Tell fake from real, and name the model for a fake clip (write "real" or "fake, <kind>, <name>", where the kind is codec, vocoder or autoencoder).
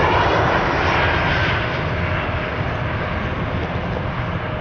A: real